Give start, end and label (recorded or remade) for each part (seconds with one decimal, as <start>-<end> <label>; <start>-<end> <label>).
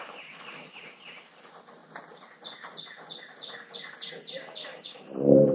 0.0-5.5 recorded